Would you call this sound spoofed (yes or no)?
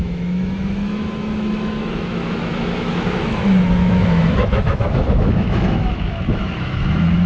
yes